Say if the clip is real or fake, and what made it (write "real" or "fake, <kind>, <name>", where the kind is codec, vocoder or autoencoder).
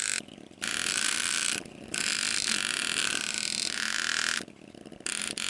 real